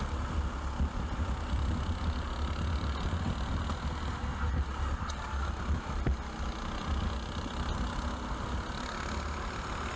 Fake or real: real